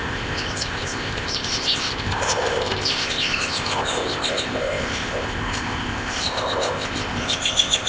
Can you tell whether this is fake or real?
fake